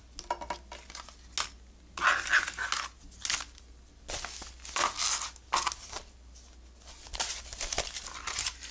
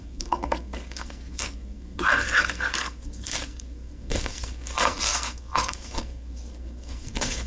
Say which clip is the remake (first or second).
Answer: second